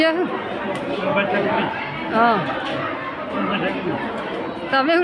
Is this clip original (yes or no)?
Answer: yes